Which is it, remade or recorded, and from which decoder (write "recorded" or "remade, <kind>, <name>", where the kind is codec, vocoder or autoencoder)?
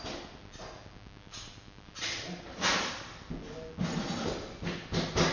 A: recorded